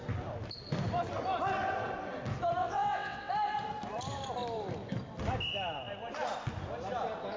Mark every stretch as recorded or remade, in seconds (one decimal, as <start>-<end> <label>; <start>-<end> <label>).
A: 0.0-2.6 recorded; 2.6-3.3 remade; 3.3-7.4 recorded